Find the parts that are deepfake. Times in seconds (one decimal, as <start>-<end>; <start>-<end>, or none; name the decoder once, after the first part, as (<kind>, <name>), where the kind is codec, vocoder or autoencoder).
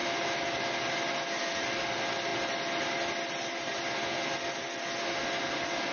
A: none